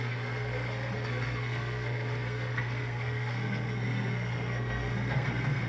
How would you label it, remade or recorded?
remade